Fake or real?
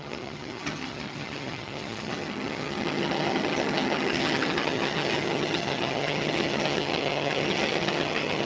fake